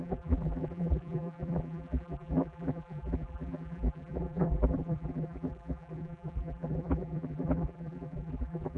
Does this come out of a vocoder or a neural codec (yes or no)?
yes